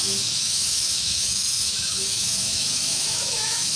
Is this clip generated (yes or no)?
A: yes